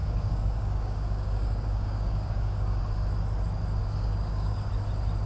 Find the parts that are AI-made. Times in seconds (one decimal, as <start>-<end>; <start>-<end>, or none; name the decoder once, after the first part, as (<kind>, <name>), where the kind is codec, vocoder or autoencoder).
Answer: 0.0-2.8 (codec, DAC); 3.8-4.7